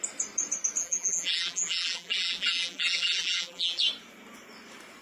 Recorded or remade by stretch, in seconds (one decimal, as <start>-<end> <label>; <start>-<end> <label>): 0.0-0.8 recorded; 0.8-3.8 remade; 3.8-5.0 recorded